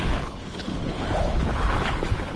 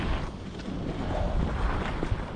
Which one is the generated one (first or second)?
first